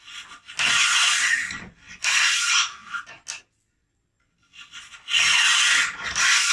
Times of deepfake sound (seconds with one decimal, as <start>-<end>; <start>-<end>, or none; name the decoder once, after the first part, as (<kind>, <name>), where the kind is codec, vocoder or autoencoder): none